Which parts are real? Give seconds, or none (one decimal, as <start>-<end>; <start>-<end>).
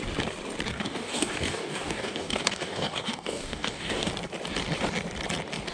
0.0-0.7; 4.1-5.7